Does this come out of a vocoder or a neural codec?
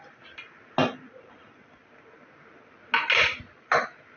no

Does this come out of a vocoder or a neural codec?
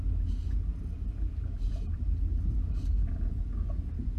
no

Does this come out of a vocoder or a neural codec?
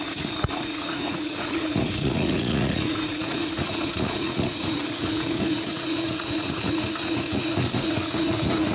yes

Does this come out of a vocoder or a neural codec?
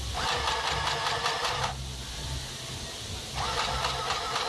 no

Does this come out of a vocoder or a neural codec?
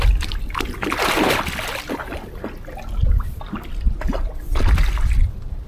no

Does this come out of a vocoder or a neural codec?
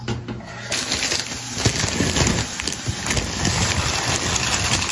no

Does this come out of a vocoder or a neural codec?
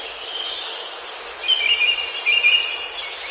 no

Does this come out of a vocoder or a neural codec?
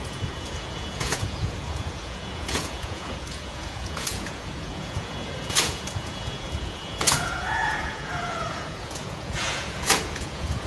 yes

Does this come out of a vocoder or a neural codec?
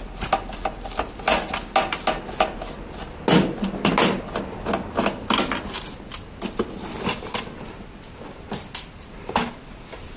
no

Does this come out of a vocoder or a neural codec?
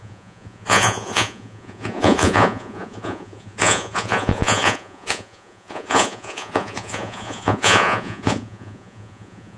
yes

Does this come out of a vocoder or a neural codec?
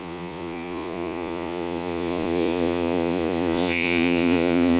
yes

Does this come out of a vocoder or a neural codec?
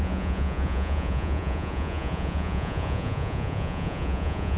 yes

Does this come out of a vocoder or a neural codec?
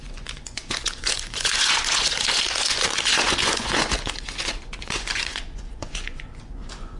yes